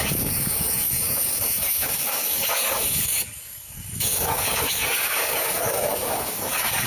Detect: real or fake fake